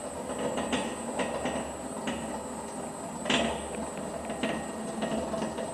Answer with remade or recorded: recorded